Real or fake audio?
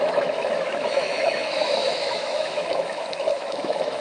fake